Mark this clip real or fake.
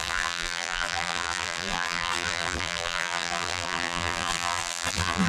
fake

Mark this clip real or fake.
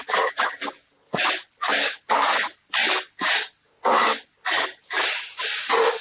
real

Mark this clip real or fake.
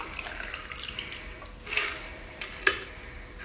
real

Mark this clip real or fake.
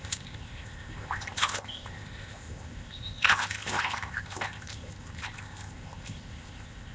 fake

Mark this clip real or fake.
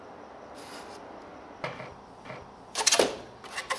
real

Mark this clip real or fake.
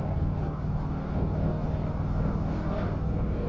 fake